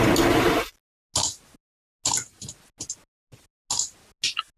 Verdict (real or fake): real